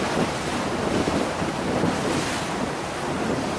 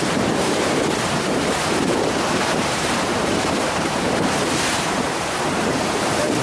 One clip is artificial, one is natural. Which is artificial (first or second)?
second